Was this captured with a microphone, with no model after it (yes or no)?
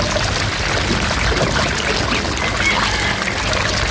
yes